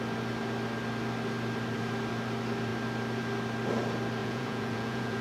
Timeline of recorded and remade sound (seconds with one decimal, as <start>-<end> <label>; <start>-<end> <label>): 0.0-4.2 recorded; 4.2-5.2 remade